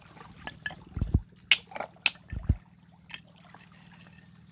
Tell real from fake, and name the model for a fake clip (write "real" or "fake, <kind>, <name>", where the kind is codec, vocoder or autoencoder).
real